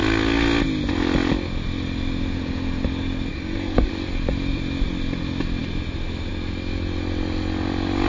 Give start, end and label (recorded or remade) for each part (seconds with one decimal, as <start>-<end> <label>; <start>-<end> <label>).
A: 0.0-3.3 recorded; 3.3-3.9 remade; 3.9-8.1 recorded